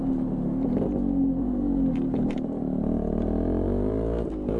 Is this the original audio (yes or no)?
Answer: yes